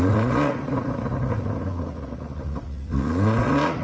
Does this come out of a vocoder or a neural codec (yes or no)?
yes